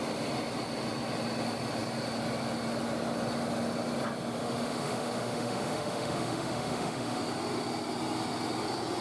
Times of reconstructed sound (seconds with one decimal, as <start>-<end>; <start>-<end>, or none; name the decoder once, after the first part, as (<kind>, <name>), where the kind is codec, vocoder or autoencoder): 4.4-7.2 (autoencoder, DAC-VAE)